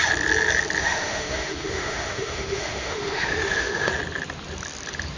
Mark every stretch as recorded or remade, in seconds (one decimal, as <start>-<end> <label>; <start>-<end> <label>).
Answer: 0.0-0.8 recorded; 0.8-3.9 remade; 3.9-5.2 recorded